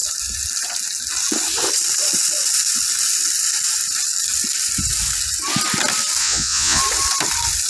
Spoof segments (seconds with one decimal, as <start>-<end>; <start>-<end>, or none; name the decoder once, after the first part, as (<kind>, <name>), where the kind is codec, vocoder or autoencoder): 6.2-6.8 (vocoder, Vocos)